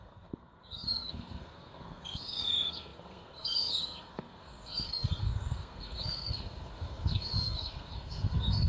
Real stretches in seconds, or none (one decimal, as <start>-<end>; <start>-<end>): none